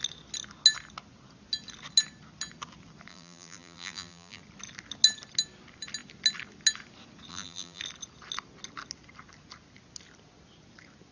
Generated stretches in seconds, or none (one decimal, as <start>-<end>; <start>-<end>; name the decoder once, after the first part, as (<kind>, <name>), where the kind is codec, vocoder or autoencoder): 3.1-4.4 (vocoder, BigVGAN v2); 7.3-7.8